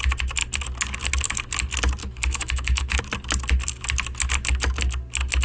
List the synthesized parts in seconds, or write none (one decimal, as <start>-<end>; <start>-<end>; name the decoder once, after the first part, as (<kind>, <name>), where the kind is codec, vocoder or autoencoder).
2.0-3.0 (autoencoder, DAC-VAE)